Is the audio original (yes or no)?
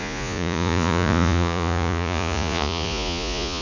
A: no